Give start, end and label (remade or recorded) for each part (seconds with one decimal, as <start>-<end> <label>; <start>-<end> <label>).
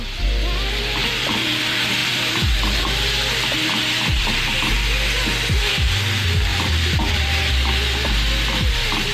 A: 0.0-1.0 recorded; 1.0-1.6 remade; 1.6-2.0 recorded; 2.0-2.8 remade; 2.8-6.5 recorded; 6.5-7.4 remade; 7.4-9.1 recorded